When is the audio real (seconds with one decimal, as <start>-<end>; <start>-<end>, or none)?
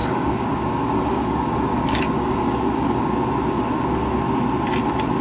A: 3.1-5.2